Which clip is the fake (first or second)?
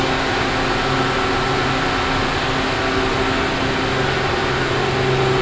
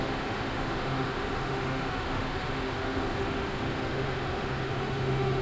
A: second